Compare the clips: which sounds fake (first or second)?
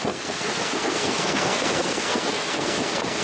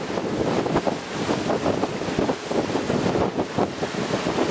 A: first